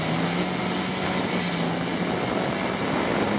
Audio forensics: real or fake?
real